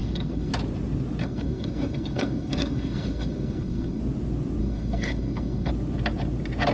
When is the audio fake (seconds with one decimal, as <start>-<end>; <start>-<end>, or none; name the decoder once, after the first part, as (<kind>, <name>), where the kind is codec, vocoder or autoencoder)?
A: 0.0-0.5 (codec, SNAC); 1.2-4.0; 4.6-5.7